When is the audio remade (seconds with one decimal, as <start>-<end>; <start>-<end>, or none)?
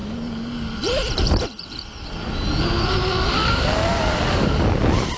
none